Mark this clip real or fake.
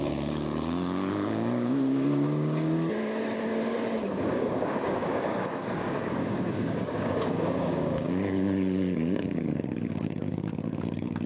fake